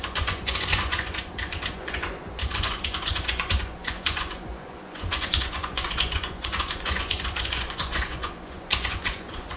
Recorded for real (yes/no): no